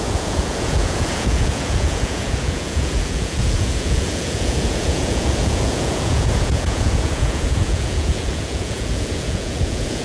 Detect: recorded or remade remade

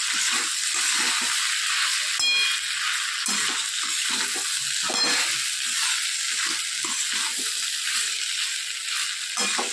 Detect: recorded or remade recorded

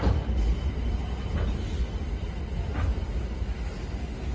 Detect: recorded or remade recorded